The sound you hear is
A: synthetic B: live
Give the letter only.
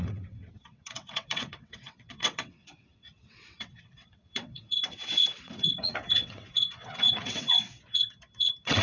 A